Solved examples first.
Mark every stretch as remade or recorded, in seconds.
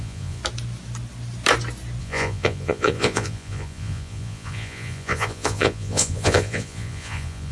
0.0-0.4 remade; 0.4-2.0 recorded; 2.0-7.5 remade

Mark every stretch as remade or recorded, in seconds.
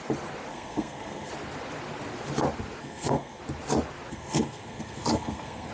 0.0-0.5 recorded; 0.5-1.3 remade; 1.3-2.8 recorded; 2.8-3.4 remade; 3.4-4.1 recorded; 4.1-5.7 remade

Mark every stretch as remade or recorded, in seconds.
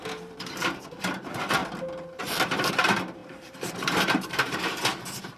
0.0-1.6 remade; 1.6-2.7 recorded; 2.7-5.4 remade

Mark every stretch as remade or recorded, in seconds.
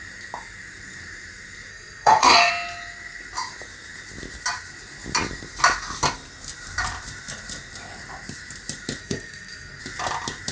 0.0-1.7 recorded; 1.7-2.5 remade; 2.5-9.0 recorded; 9.0-9.8 remade; 9.8-10.5 recorded